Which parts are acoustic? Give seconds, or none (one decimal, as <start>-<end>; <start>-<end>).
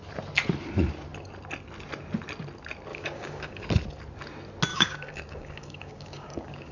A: 0.0-2.9; 3.7-4.7